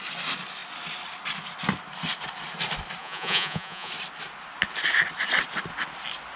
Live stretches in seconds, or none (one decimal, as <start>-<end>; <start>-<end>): 0.0-3.0; 3.9-6.4